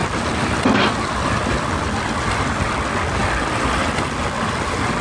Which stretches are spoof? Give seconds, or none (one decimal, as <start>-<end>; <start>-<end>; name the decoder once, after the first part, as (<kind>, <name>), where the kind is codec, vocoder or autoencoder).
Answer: none